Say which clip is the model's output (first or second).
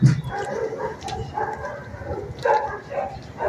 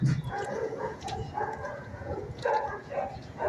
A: second